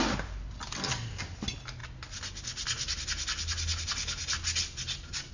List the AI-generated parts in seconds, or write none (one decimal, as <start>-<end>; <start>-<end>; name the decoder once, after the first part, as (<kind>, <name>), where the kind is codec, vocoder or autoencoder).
none